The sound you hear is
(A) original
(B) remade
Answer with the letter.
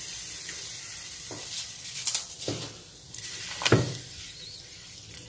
B